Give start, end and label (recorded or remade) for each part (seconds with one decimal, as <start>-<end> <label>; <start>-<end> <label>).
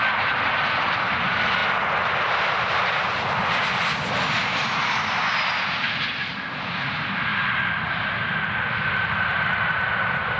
0.0-10.4 recorded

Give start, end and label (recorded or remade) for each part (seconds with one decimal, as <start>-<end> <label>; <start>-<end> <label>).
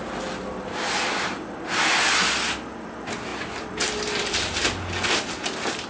0.0-5.9 recorded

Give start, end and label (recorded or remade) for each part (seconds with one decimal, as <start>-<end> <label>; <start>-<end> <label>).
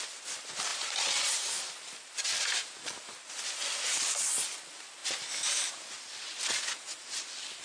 0.0-0.7 recorded; 0.7-1.3 remade; 1.3-7.6 recorded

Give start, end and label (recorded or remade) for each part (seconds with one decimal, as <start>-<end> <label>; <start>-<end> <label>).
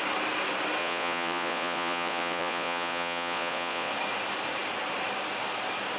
0.0-0.8 recorded; 0.8-3.9 remade; 3.9-6.0 recorded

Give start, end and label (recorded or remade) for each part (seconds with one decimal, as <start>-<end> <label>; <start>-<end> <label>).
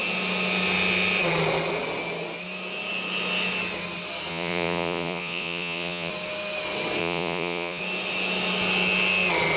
0.0-4.3 recorded; 4.3-6.1 remade; 6.1-7.0 recorded; 7.0-7.8 remade; 7.8-9.6 recorded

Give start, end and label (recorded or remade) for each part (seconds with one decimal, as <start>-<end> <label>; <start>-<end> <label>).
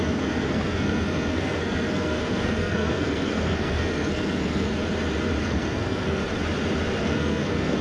0.0-4.7 remade; 4.7-5.4 recorded; 5.4-6.2 remade; 6.2-7.0 recorded; 7.0-7.8 remade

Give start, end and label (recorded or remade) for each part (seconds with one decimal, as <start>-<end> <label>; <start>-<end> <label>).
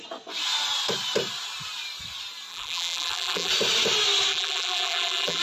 0.0-2.5 recorded; 2.5-3.5 remade; 3.5-4.3 recorded; 4.3-5.4 remade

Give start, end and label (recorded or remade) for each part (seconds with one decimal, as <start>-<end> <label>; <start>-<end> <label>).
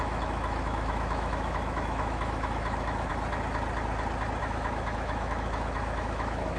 0.0-3.1 remade; 3.1-4.4 recorded; 4.4-6.6 remade